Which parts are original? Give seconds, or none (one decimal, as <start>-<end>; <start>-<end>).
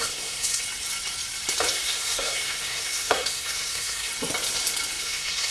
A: 0.6-1.7; 4.1-5.0